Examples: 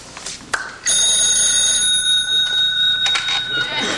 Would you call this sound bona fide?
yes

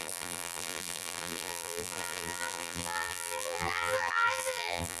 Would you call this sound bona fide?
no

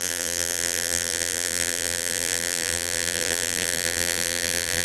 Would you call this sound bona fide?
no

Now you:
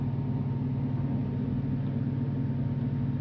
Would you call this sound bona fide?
yes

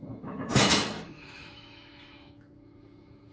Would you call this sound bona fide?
no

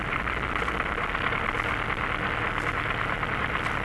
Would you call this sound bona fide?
yes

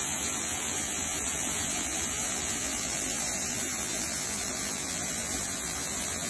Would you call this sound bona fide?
no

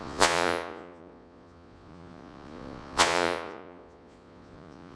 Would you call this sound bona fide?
no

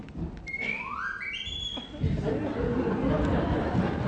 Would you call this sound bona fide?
yes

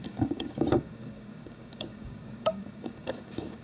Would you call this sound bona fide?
no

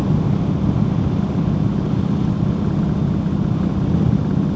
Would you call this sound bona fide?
yes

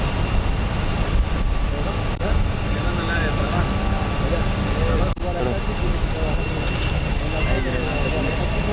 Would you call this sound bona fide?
yes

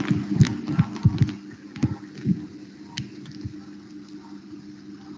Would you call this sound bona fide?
yes